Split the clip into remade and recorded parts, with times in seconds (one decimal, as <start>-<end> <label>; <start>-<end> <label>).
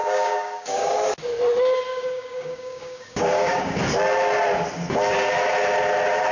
0.0-1.0 remade; 1.0-1.9 recorded; 1.9-3.8 remade; 3.8-6.3 recorded